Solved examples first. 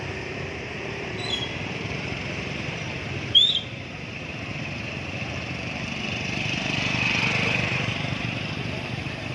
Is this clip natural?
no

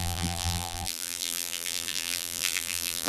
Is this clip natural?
no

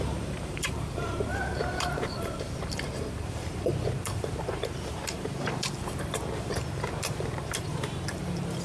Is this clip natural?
no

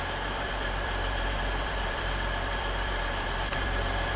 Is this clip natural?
no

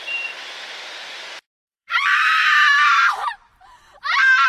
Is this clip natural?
no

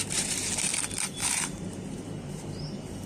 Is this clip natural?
no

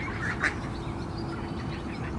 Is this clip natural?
yes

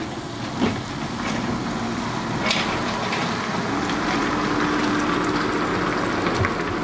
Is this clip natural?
yes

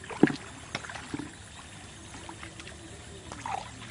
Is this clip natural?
yes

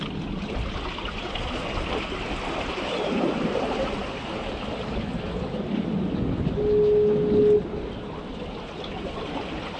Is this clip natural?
yes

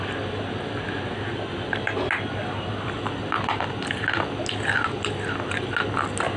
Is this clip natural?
yes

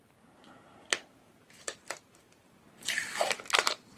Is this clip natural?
no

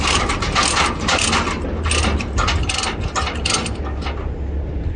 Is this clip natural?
yes